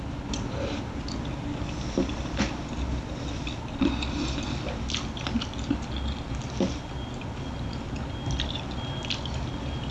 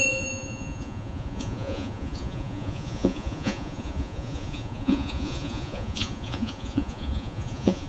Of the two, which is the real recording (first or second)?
first